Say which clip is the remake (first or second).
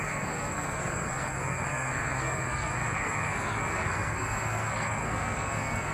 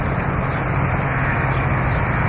first